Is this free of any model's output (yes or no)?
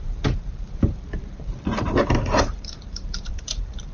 no